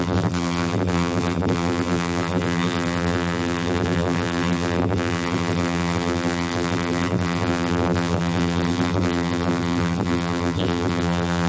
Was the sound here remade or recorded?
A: remade